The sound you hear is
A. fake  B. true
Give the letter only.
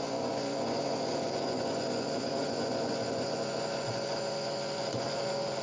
A